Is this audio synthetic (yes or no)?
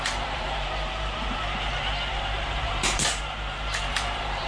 yes